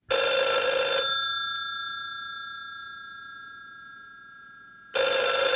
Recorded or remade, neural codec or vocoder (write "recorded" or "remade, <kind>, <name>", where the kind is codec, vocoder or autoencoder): recorded